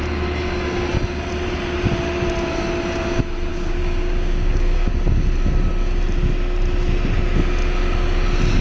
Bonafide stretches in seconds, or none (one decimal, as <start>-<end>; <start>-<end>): 0.0-3.5; 4.9-8.6